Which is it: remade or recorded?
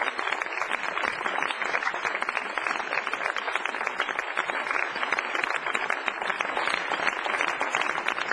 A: recorded